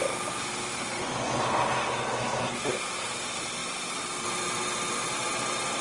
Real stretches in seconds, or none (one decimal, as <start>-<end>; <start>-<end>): 0.0-0.9; 1.4-5.8